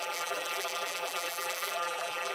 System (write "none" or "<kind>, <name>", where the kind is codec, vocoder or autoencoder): vocoder, BigVGAN v2